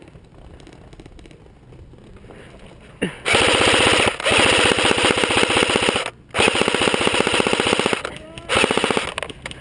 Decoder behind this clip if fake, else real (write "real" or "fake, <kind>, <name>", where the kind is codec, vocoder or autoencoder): real